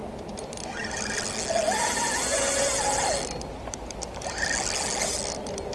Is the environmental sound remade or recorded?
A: recorded